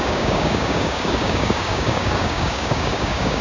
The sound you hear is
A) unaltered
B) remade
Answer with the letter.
B